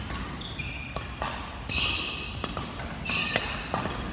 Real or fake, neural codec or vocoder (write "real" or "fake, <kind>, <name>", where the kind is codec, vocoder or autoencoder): real